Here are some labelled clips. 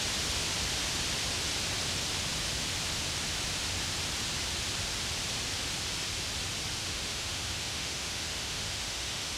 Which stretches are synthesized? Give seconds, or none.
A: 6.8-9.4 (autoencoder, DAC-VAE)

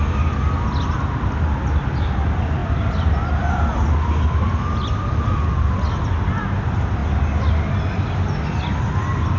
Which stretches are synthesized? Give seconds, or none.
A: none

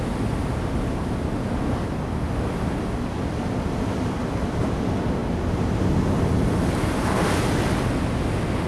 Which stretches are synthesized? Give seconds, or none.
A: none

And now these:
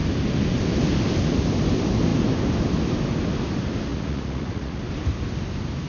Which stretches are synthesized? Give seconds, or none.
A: 3.9-4.8 (vocoder, Vocos)

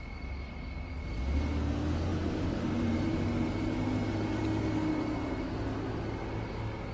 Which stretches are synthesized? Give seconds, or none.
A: 2.1-3.3 (vocoder, BigVGAN v2)